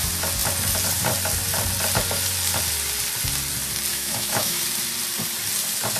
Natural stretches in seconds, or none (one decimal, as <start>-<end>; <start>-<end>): 0.0-3.9; 4.6-6.0